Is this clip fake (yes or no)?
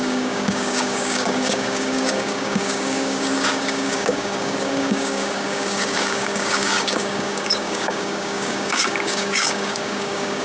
yes